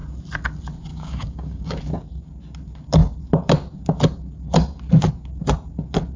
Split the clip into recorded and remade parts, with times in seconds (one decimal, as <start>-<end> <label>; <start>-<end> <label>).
0.0-0.9 recorded; 0.9-1.8 remade; 1.8-6.2 recorded